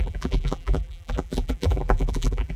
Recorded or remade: remade